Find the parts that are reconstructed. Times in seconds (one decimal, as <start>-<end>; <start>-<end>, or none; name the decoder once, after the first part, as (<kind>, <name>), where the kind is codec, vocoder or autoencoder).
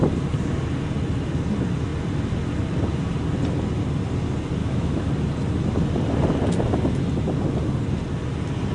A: 4.6-5.1 (autoencoder, DAC-VAE)